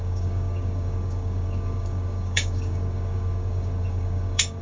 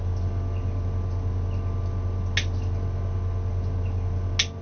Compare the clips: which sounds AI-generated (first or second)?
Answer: first